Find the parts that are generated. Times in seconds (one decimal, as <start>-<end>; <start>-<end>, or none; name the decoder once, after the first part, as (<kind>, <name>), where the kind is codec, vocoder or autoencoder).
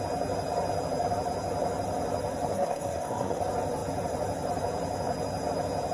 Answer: 2.5-3.4 (codec, SNAC)